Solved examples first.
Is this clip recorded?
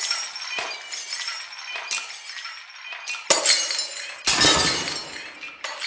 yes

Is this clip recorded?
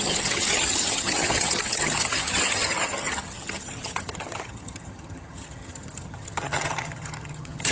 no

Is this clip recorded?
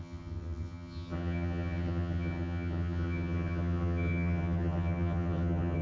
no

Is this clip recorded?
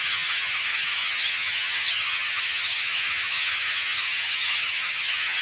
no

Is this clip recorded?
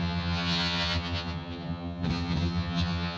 no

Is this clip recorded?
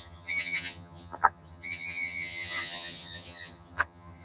no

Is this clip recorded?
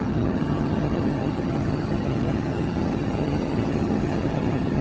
no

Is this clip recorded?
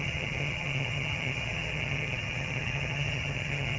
no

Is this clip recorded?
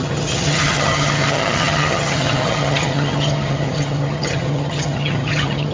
no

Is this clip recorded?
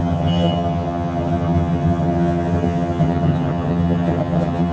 no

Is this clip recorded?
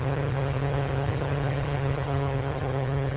no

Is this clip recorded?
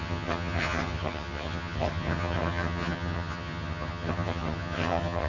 no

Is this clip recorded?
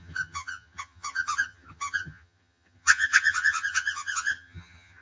no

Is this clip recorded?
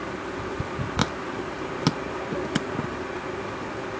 yes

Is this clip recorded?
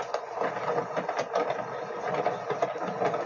yes